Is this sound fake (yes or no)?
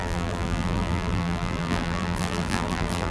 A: yes